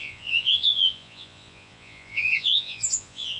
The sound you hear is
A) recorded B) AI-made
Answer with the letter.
B